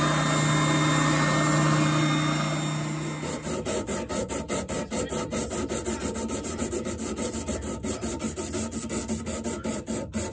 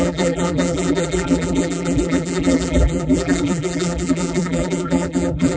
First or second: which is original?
first